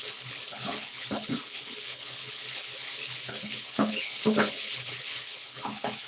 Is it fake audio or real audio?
fake